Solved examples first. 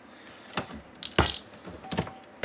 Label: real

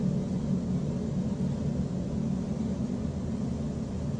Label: real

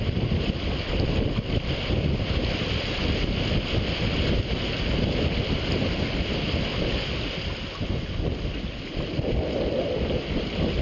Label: real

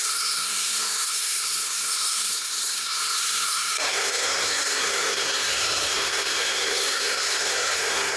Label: fake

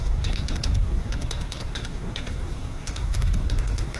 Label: fake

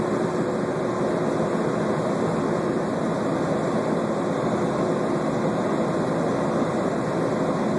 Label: real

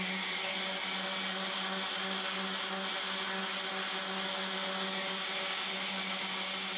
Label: real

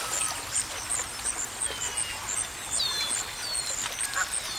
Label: real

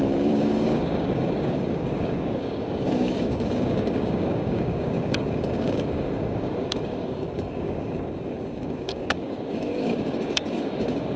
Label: fake